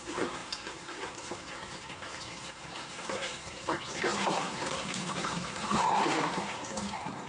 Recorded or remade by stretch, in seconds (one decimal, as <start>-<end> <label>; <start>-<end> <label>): 0.0-7.3 remade